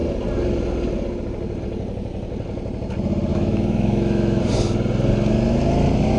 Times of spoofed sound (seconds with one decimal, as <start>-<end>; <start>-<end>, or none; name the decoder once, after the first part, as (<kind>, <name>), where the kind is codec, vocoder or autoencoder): 3.3-4.4 (autoencoder, DAC-VAE)